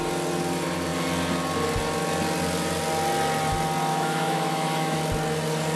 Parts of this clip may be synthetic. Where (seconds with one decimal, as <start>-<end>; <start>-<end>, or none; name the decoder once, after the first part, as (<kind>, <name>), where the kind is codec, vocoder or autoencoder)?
3.9-5.0 (autoencoder, DAC-VAE)